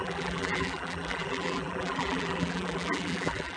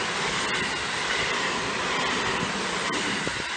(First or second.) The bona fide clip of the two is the second